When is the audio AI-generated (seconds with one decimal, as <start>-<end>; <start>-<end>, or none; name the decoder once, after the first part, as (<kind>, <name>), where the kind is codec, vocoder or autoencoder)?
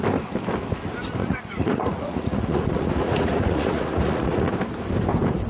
1.2-4.5 (vocoder, Vocos)